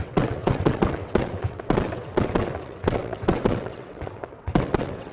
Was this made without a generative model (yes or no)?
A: no